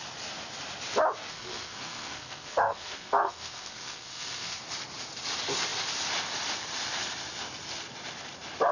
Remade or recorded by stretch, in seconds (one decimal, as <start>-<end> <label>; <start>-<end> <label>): 0.0-1.3 recorded; 1.3-4.6 remade; 4.6-8.7 recorded